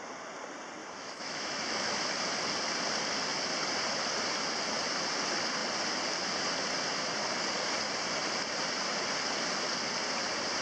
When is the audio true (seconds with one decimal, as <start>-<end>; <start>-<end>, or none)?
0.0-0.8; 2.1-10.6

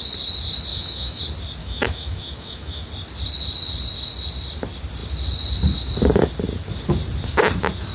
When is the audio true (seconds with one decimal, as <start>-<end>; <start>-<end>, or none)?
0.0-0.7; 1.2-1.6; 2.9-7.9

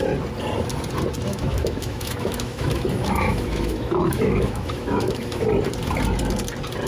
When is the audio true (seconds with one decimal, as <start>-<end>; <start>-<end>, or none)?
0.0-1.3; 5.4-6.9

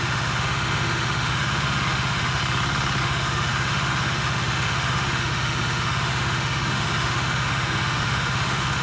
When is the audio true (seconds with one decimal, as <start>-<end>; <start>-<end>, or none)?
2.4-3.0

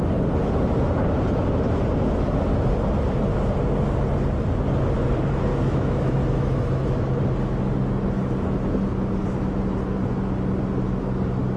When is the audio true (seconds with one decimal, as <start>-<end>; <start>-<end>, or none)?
0.0-5.5; 7.2-11.6

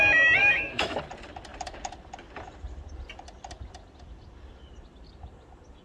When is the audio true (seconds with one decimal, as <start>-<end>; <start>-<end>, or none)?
0.0-0.4; 1.0-5.8